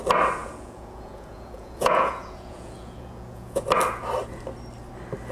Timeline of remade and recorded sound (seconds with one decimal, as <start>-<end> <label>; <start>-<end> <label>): 0.0-0.4 recorded; 0.4-3.6 remade; 3.6-5.3 recorded